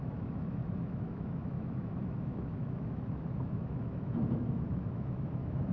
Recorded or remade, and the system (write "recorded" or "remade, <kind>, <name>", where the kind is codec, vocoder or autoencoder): remade, autoencoder, DAC-VAE